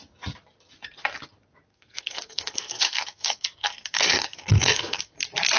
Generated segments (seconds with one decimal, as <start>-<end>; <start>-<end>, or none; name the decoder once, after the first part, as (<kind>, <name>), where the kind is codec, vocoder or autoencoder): 1.7-5.1 (codec, SNAC)